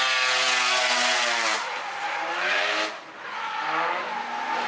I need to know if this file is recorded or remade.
recorded